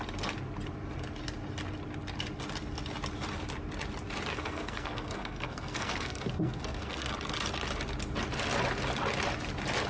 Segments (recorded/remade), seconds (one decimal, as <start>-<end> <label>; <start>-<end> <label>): 0.0-4.3 recorded; 4.3-7.1 remade; 7.1-9.9 recorded